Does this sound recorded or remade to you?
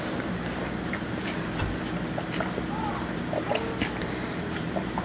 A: recorded